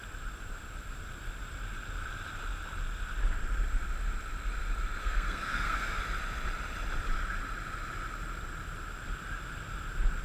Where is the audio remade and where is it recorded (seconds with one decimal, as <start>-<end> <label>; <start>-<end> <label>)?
0.0-5.0 recorded; 5.0-6.0 remade; 6.0-10.2 recorded